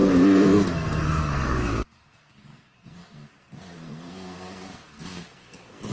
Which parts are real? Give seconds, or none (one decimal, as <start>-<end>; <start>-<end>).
none

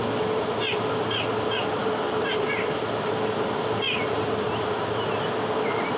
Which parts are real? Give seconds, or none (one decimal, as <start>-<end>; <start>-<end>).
0.0-1.8; 2.8-6.0

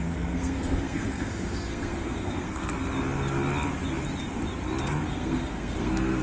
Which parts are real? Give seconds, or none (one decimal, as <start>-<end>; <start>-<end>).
2.7-5.1

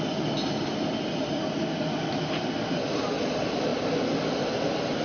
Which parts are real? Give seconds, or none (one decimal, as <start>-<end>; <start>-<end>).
0.0-5.0

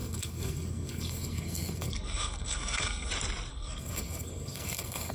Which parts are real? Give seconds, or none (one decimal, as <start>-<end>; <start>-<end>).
3.1-3.5

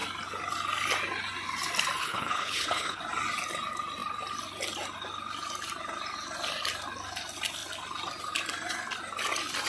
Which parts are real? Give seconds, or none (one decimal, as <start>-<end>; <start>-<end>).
0.0-2.0; 3.0-9.7

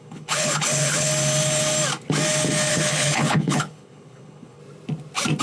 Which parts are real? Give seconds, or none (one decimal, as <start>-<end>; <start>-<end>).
1.1-2.7; 4.6-5.4

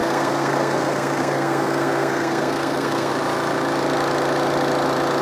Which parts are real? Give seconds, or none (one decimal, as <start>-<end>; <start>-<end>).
3.1-5.2